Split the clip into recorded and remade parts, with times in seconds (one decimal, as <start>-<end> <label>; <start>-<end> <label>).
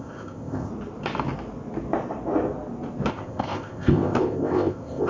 0.0-0.7 remade; 0.7-3.1 recorded; 3.1-5.1 remade